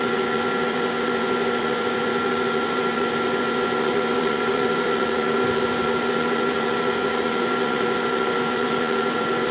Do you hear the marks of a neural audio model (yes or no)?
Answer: yes